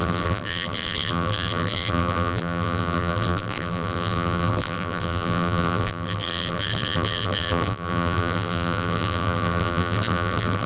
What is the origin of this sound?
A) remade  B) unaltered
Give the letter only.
A